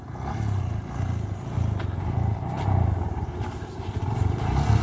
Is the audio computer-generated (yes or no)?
no